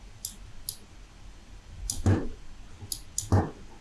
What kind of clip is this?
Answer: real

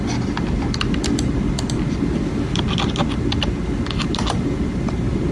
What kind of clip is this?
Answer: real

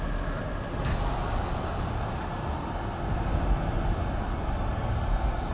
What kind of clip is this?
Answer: real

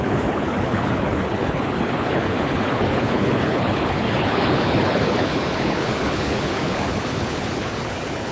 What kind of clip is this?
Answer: fake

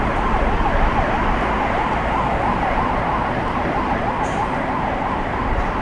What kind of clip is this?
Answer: real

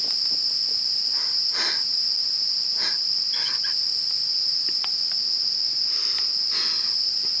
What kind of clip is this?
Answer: real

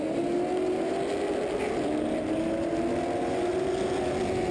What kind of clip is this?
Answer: real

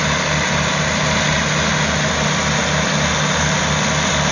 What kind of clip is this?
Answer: real